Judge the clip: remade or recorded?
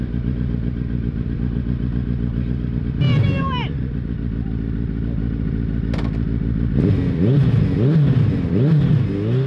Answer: recorded